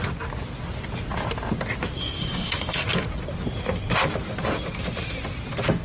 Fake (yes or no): no